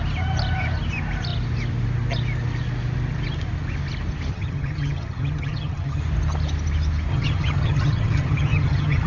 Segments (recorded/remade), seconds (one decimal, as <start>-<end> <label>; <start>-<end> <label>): 0.0-4.3 recorded; 4.3-6.0 remade; 6.0-7.1 recorded; 7.1-9.1 remade